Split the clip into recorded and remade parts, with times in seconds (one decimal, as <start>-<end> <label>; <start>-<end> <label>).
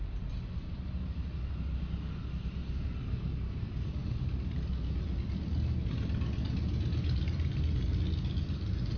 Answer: 0.0-2.6 recorded; 2.6-3.3 remade; 3.3-4.0 recorded; 4.0-4.7 remade; 4.7-9.0 recorded